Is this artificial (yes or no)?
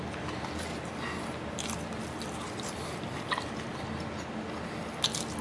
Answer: no